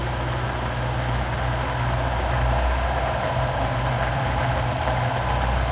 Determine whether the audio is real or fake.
fake